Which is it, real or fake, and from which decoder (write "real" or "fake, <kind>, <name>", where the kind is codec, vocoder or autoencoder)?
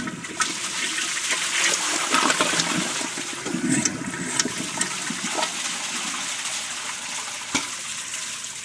real